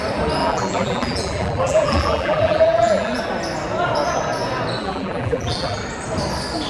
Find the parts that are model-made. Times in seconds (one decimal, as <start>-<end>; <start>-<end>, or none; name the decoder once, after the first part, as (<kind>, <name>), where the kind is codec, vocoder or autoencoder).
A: 0.4-3.2 (vocoder, BigVGAN v2); 4.8-5.8